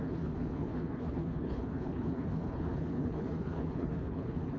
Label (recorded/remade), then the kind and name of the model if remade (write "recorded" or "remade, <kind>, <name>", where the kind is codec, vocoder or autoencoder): remade, codec, HILCodec